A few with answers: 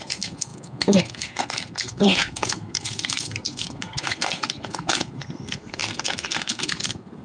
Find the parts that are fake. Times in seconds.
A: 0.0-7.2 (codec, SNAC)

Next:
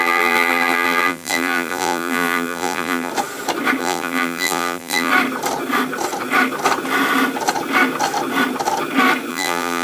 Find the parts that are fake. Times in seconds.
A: 0.0-3.1 (vocoder, BigVGAN v2); 3.8-5.1; 9.3-9.8

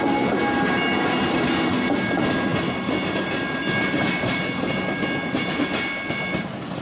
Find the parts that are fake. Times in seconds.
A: none

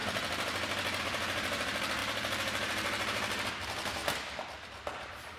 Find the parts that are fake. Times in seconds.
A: 1.0-4.0 (vocoder, BigVGAN v2)

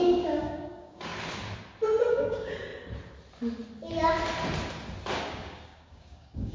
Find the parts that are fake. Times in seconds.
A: 0.0-1.1 (codec, DAC); 2.1-2.7; 5.2-6.5

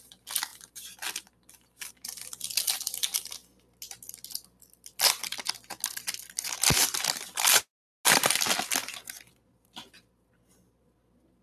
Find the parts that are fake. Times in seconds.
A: 0.5-1.9 (vocoder, BigVGAN v2)